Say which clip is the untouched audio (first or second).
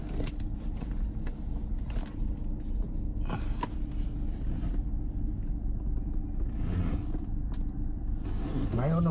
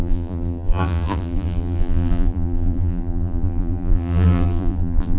first